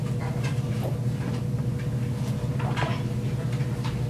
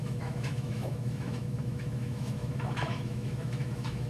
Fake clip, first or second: second